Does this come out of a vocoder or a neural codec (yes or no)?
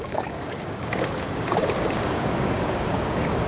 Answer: yes